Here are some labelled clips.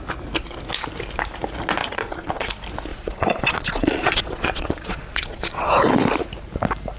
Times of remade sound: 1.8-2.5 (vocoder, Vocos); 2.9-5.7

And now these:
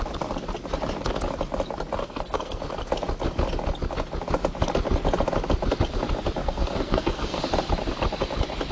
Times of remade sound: 2.0-2.6 (codec, SNAC); 6.4-7.4

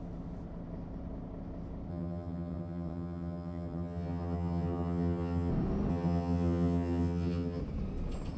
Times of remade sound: 1.9-5.5 (vocoder, HiFi-GAN); 5.9-7.6

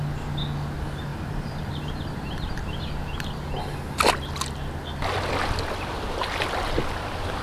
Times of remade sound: 1.1-2.8 (vocoder, BigVGAN v2)

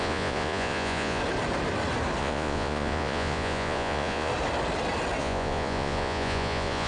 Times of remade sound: 0.0-1.2 (vocoder, Vocos); 2.2-4.3; 5.2-6.9

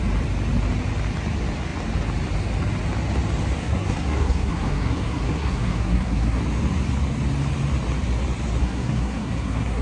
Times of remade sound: 3.6-6.4 (codec, SNAC); 8.6-9.8

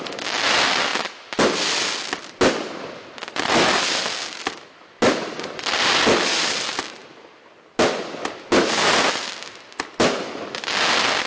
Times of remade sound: none

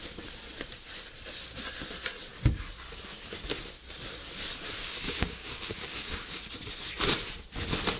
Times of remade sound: 4.8-6.4 (codec, DAC)